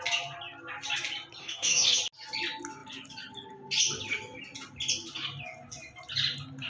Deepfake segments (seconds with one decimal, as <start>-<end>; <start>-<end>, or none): 1.4-2.0